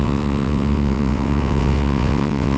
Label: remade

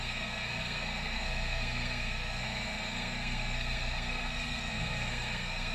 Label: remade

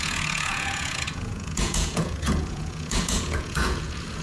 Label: remade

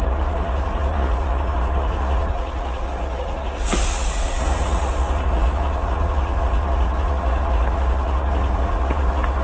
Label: remade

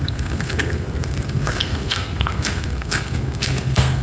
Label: remade